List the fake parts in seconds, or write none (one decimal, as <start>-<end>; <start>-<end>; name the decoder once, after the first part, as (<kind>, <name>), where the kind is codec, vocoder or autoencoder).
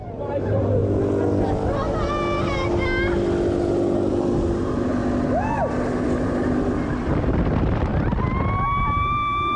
0.0-0.8 (vocoder, BigVGAN v2); 4.1-4.9; 7.0-7.9; 8.8-9.6